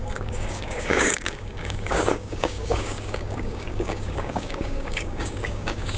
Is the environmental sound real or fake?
fake